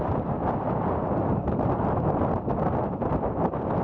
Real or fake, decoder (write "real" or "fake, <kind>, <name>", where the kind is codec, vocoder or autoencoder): real